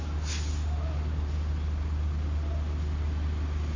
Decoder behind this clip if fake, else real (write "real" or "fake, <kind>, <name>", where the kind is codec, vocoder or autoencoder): real